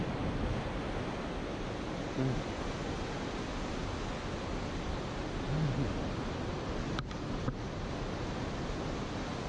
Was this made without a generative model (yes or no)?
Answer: yes